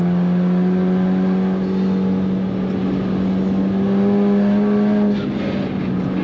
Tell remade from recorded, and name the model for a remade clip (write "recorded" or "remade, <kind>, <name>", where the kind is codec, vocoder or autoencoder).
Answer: recorded